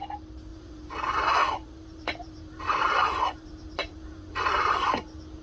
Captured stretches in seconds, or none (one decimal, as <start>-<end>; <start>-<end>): 0.0-0.5; 1.0-1.6; 4.7-5.4